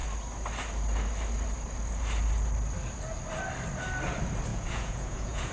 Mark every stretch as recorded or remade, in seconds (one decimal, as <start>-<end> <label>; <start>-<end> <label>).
0.0-4.5 recorded; 4.5-5.5 remade